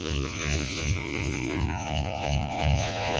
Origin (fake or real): fake